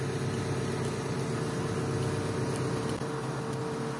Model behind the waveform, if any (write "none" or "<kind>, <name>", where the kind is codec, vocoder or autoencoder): none